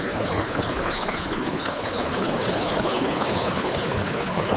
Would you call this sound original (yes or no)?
no